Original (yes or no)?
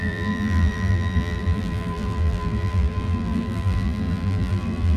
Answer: no